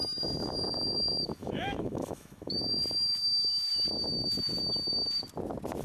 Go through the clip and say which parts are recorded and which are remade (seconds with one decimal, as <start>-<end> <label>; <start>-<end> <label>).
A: 0.0-2.8 remade; 2.8-5.8 recorded